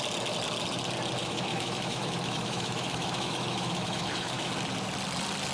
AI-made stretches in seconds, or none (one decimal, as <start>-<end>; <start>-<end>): 1.2-4.5

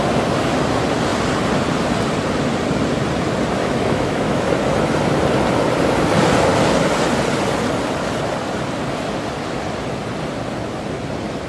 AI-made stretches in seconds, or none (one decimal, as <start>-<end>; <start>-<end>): 3.6-4.5

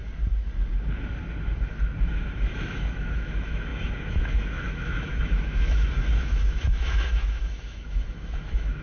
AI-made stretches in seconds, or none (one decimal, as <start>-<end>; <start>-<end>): 2.0-8.8

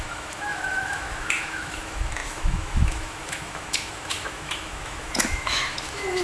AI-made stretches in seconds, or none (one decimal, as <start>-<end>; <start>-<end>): 0.0-6.2

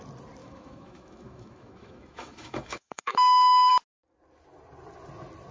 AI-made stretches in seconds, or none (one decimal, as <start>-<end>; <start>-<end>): 0.4-3.7

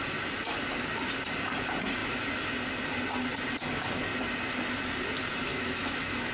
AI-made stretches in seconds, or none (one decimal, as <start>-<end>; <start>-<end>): 5.5-6.3

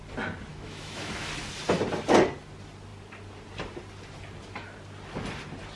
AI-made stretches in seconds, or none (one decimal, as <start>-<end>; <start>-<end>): 0.5-1.3

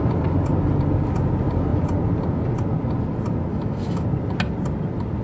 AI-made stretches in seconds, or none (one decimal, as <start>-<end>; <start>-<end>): 3.5-4.0